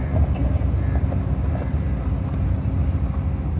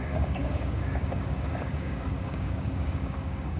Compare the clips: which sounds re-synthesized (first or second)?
second